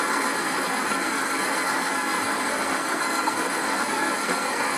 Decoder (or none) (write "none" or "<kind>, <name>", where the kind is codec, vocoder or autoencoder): codec, SNAC